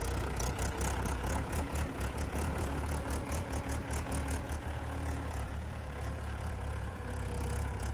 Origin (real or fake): fake